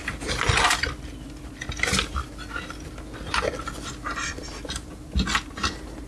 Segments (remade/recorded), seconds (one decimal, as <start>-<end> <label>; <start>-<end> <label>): 0.0-6.1 recorded